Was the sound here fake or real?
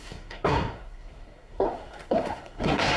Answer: fake